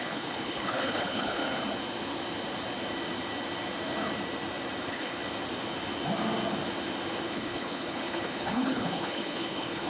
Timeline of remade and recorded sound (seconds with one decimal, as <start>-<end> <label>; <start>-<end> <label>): 0.0-1.4 remade; 1.4-4.8 recorded; 4.8-5.2 remade; 5.2-7.2 recorded; 7.2-9.9 remade